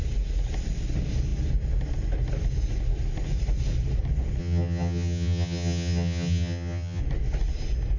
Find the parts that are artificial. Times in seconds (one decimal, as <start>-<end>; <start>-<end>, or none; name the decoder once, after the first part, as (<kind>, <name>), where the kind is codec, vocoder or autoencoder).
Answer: 4.4-7.0 (vocoder, HiFi-GAN)